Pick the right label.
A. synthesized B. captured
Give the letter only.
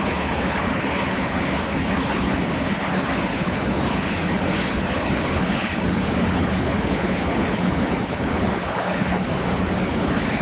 A